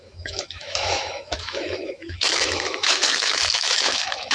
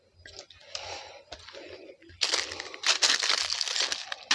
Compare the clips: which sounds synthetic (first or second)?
first